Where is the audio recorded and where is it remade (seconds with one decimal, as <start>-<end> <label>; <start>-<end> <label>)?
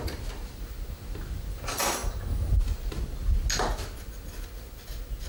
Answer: 0.0-5.3 recorded